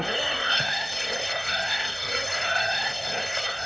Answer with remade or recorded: remade